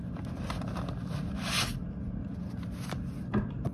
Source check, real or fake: real